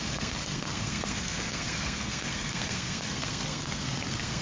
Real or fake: fake